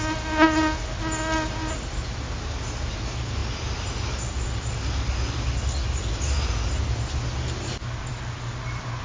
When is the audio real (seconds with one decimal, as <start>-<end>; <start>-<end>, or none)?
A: 0.0-9.0